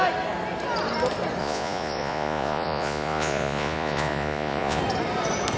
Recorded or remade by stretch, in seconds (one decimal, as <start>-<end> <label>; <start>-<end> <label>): 0.0-1.4 recorded; 1.4-4.8 remade; 4.8-5.6 recorded